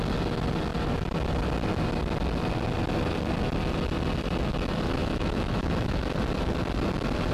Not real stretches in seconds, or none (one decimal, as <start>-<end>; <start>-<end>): 5.0-6.0